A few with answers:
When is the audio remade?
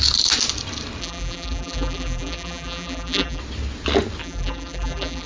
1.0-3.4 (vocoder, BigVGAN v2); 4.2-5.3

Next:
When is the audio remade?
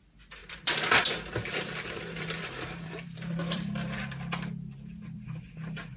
0.4-4.0 (vocoder, BigVGAN v2)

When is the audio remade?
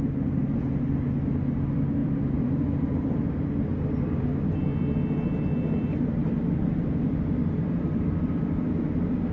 2.0-4.5 (vocoder, BigVGAN v2); 6.2-8.7